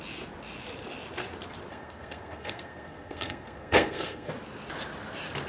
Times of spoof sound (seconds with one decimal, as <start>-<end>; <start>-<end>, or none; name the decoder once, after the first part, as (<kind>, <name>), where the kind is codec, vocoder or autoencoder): 1.7-4.3 (codec, SNAC)